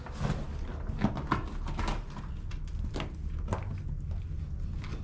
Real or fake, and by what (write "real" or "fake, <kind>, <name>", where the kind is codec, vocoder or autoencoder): real